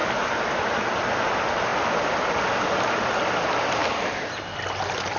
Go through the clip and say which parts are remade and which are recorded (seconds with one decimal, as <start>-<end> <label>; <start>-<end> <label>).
0.0-0.6 remade; 0.6-1.7 recorded; 1.7-3.3 remade; 3.3-5.2 recorded